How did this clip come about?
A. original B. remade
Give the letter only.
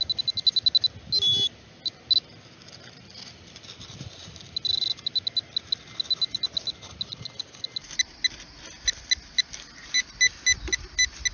A